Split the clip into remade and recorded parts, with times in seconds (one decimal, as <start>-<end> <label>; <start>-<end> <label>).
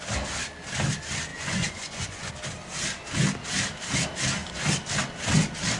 0.0-1.3 recorded; 1.3-2.3 remade; 2.3-5.8 recorded